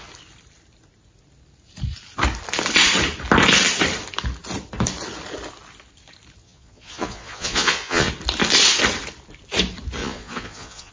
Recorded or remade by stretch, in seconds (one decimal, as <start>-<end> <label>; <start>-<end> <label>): 0.0-6.4 recorded; 6.4-8.1 remade; 8.1-10.0 recorded; 10.0-10.9 remade